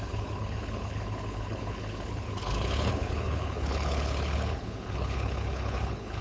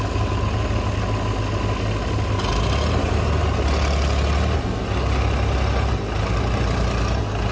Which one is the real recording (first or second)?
second